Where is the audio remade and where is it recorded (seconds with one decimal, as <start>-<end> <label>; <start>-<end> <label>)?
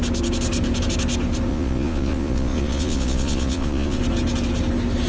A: 0.0-1.5 recorded; 1.5-4.0 remade; 4.0-5.1 recorded